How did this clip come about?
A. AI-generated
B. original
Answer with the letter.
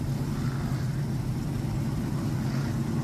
B